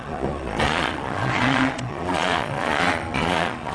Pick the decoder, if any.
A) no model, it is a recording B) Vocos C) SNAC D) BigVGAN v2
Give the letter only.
B